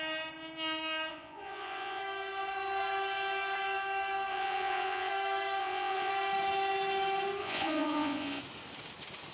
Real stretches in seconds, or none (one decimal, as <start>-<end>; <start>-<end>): 0.0-1.1; 2.0-4.3; 5.1-5.6; 6.1-7.4; 8.4-9.3